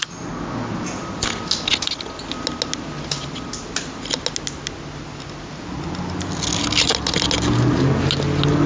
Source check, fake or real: real